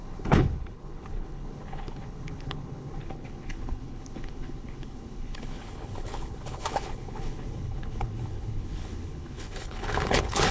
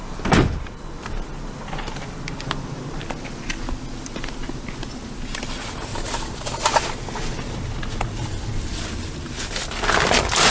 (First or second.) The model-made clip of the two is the first